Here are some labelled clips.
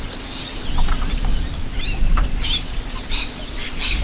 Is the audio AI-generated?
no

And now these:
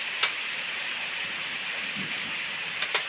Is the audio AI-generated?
no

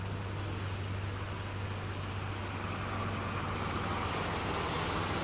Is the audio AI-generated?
no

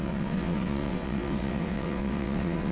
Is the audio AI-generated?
yes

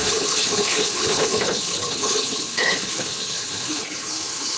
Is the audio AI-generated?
yes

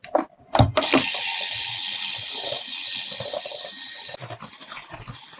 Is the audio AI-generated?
no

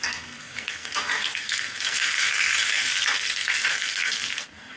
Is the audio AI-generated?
yes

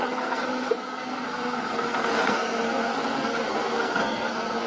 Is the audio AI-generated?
yes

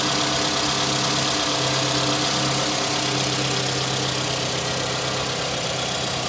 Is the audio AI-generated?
no